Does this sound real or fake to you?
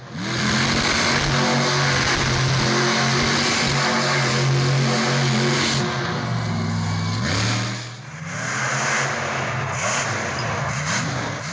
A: real